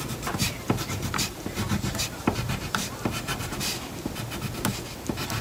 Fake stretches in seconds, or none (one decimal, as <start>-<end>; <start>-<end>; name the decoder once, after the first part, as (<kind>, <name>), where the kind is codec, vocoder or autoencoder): 0.4-3.6 (vocoder, BigVGAN v2)